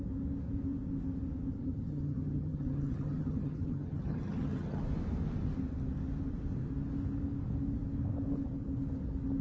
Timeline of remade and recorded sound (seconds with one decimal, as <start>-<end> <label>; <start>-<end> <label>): 0.0-1.6 recorded; 1.6-4.8 remade; 4.8-9.4 recorded

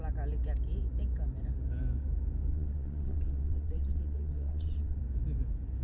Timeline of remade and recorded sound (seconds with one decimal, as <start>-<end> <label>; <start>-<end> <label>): 0.0-2.5 recorded; 2.5-5.0 remade; 5.0-5.8 recorded

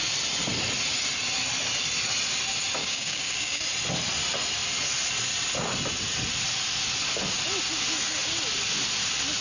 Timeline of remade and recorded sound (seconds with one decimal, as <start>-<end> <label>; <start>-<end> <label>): 0.0-2.8 recorded; 2.8-3.6 remade; 3.6-9.4 recorded

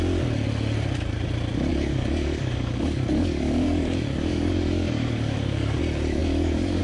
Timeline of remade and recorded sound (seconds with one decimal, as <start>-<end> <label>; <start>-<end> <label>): 0.0-1.7 recorded; 1.7-5.8 remade; 5.8-6.2 recorded; 6.2-6.8 remade